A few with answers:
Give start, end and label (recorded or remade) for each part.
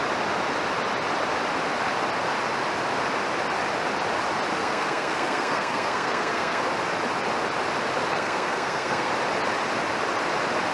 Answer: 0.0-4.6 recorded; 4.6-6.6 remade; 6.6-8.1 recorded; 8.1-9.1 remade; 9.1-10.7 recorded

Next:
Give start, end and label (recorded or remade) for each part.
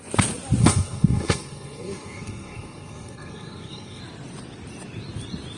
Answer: 0.0-0.6 recorded; 0.6-4.0 remade; 4.0-5.6 recorded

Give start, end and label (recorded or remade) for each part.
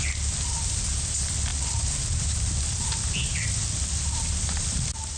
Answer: 0.0-5.2 recorded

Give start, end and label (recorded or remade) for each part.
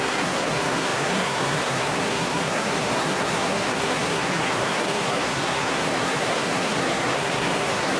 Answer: 0.0-8.0 remade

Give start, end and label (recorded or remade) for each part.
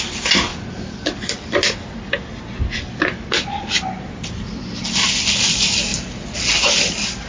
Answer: 0.0-7.3 recorded